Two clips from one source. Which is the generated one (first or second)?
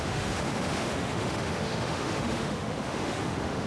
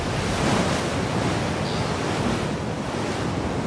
first